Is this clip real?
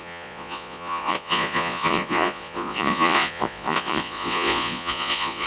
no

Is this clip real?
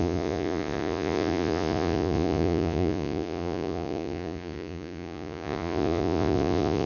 no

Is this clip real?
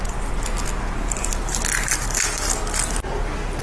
yes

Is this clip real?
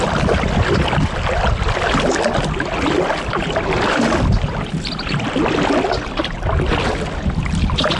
yes